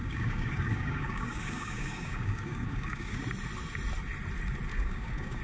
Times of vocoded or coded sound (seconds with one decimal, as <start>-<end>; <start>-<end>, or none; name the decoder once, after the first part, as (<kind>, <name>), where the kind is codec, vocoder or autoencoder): 0.0-3.2 (codec, DAC); 4.7-5.4